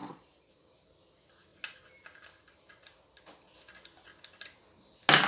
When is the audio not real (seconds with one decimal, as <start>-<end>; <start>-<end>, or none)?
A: 0.0-0.5